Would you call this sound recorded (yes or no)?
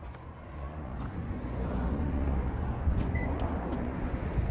no